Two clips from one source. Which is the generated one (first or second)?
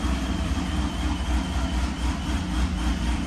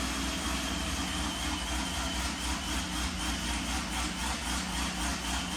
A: first